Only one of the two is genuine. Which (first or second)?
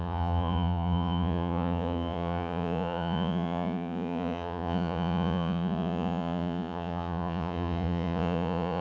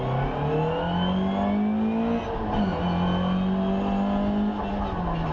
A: second